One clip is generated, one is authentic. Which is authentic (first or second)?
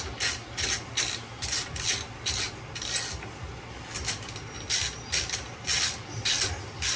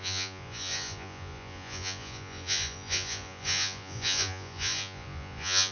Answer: first